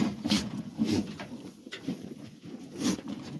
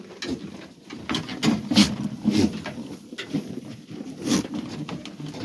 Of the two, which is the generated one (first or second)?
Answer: first